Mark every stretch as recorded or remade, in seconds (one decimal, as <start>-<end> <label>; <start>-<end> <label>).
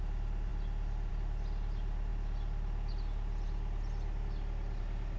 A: 0.0-5.2 recorded